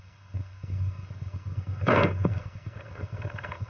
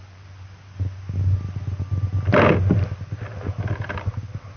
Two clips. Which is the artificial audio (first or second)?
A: first